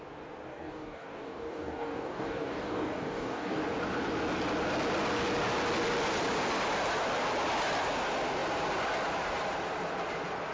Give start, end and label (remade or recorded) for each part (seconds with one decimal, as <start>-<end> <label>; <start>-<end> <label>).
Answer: 0.0-0.5 recorded; 0.5-3.6 remade; 3.6-10.5 recorded